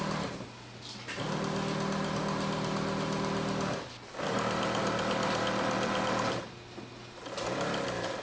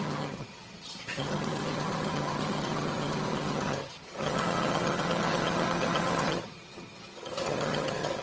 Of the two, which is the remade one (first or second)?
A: second